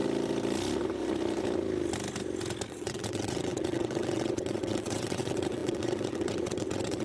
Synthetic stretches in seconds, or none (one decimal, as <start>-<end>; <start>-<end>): 2.7-7.0